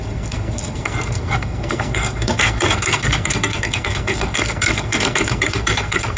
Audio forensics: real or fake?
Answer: fake